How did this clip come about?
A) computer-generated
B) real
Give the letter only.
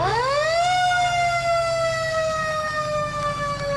A